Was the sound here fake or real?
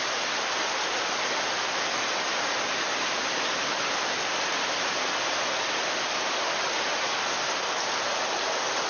real